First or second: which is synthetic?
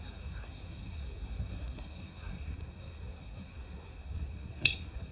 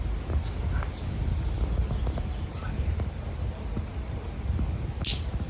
first